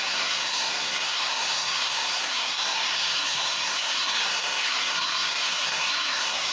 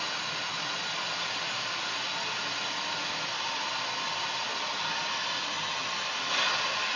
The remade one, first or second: first